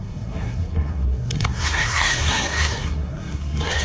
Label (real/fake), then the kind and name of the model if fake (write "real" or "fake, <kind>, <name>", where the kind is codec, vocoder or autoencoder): fake, codec, SNAC